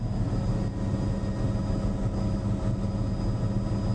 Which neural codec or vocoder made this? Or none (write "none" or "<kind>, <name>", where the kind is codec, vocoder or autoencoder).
none